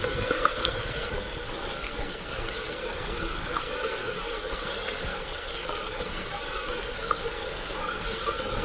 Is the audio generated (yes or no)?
yes